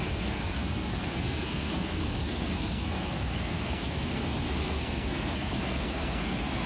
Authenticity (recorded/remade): remade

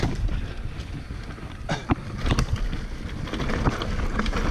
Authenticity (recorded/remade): recorded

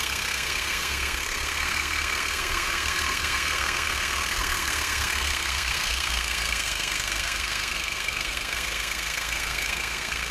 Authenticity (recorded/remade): remade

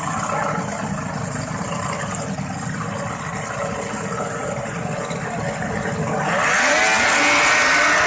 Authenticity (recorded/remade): recorded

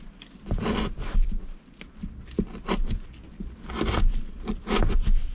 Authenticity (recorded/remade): recorded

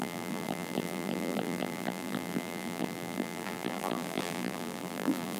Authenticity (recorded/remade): remade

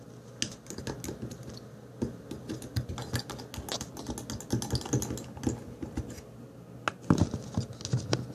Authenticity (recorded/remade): recorded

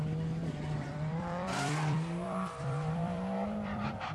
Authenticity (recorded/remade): remade